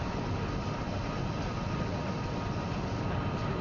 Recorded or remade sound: recorded